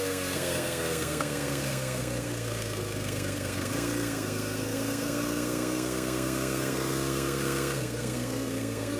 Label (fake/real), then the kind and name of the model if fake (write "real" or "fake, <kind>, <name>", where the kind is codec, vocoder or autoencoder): fake, codec, SNAC